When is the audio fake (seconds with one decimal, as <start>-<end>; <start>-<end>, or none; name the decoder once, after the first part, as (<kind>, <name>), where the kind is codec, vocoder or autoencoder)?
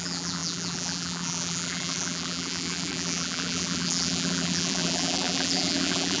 0.0-6.2 (vocoder, BigVGAN v2)